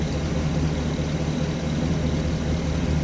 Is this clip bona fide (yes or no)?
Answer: yes